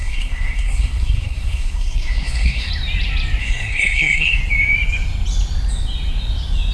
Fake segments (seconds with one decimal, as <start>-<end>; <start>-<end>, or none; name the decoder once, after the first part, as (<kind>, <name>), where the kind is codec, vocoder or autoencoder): 0.0-2.7 (codec, SNAC); 3.4-4.4